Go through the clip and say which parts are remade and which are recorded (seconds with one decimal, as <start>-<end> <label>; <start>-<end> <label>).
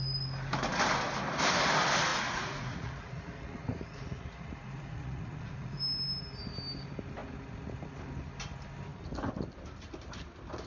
0.0-2.1 recorded; 2.1-5.8 remade; 5.8-10.7 recorded